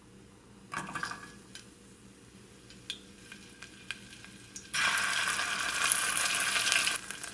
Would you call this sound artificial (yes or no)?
no